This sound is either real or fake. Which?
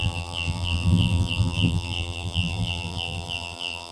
fake